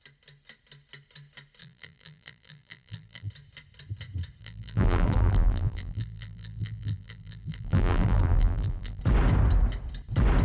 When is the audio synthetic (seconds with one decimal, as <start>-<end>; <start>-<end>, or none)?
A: 1.6-3.3; 4.4-9.0